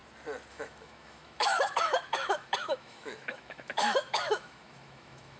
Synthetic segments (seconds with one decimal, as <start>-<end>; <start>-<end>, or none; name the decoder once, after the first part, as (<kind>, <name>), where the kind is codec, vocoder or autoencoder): 0.5-5.4 (autoencoder, DAC-VAE)

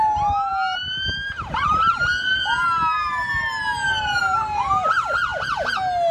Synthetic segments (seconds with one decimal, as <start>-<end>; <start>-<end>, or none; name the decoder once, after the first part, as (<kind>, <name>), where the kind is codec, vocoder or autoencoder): none

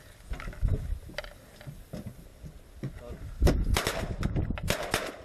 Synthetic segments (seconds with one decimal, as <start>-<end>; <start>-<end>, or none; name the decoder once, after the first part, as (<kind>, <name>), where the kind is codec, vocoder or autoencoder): none